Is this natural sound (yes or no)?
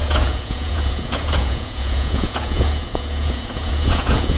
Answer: no